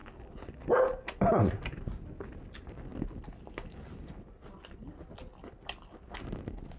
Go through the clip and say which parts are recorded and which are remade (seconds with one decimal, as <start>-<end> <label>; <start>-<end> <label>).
0.0-6.8 recorded